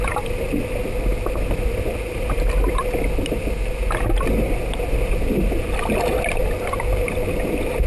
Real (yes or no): yes